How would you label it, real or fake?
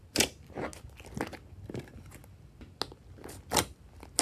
real